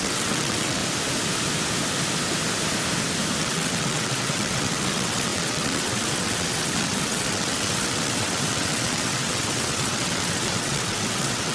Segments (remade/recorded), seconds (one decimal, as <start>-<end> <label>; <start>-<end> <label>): 0.0-0.8 remade; 0.8-3.4 recorded; 3.4-11.5 remade